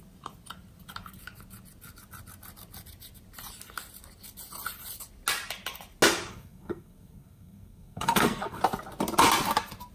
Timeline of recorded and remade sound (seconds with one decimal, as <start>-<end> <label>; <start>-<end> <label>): 0.0-6.3 recorded; 6.3-8.6 remade; 8.6-9.9 recorded